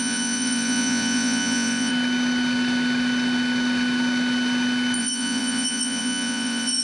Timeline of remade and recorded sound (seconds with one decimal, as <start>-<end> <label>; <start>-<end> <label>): 0.0-1.9 remade; 1.9-5.0 recorded; 5.0-6.8 remade